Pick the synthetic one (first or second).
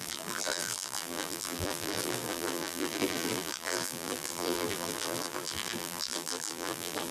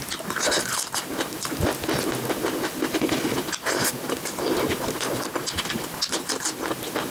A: first